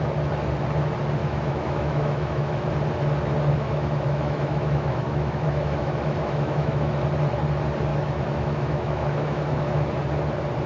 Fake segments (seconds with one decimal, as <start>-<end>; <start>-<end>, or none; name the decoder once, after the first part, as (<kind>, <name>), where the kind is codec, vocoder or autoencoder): 1.2-2.7 (autoencoder, DAC-VAE); 3.5-6.9; 7.9-10.0